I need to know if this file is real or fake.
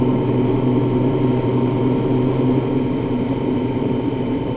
fake